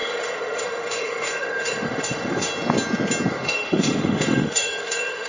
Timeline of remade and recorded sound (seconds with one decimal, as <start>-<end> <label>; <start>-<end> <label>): 0.0-2.5 remade; 2.5-3.3 recorded; 3.3-5.3 remade